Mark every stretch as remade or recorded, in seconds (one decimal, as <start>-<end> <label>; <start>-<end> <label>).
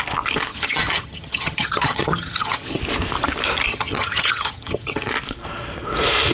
0.0-0.5 recorded; 0.5-2.8 remade; 2.8-3.7 recorded; 3.7-5.1 remade; 5.1-6.3 recorded